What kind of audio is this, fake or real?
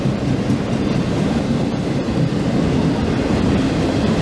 real